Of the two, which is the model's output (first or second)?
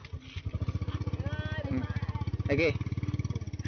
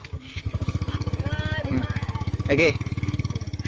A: second